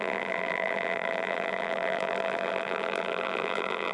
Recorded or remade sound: remade